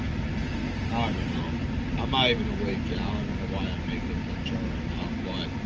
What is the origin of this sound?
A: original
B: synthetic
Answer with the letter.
A